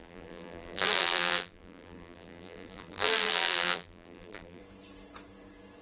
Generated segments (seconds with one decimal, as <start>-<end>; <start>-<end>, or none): 0.0-4.6